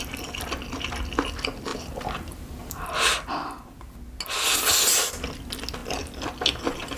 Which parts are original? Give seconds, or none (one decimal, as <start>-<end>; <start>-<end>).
0.0-1.7; 3.0-7.0